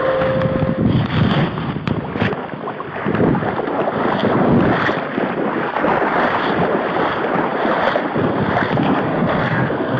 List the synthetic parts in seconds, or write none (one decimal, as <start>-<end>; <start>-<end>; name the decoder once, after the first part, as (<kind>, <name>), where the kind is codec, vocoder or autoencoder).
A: 9.1-10.0 (codec, SNAC)